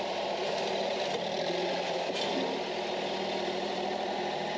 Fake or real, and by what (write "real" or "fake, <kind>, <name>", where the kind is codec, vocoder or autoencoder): fake, vocoder, BigVGAN v2